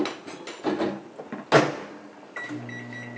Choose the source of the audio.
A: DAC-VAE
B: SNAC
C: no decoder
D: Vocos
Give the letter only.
C